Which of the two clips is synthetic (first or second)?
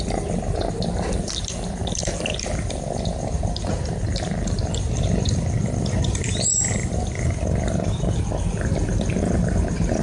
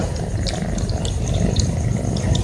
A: first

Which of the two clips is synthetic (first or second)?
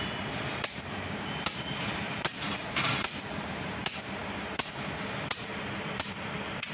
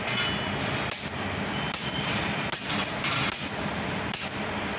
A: first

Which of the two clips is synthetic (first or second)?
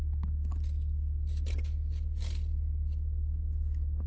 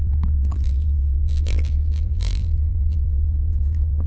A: second